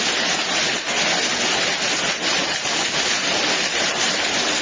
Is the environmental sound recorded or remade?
recorded